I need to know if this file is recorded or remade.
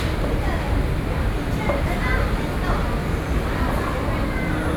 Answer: recorded